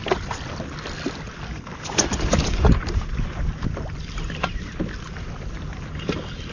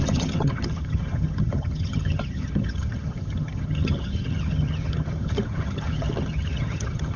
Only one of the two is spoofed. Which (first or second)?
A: second